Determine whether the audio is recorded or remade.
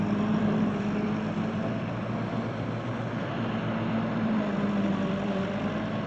remade